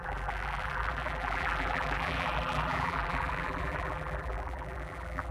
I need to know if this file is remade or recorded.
remade